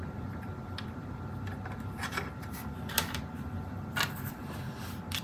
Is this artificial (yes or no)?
yes